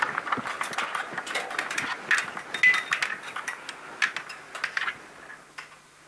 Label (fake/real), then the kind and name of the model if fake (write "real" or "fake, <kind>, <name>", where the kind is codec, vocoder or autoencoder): real